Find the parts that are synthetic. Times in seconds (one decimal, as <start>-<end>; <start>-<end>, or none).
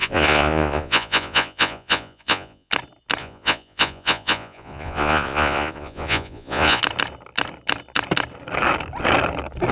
0.0-2.7; 3.2-6.8